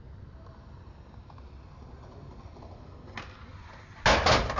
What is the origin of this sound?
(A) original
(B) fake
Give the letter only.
A